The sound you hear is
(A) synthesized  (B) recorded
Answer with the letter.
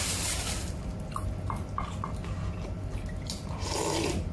B